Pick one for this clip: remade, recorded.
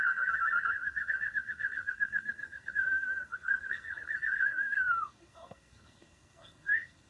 remade